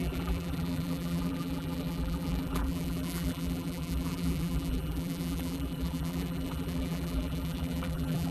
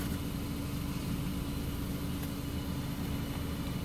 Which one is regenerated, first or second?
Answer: first